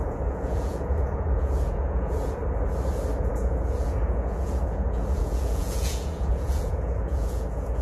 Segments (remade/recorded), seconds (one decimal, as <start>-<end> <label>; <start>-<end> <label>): 0.0-2.4 remade; 2.4-3.2 recorded; 3.2-7.8 remade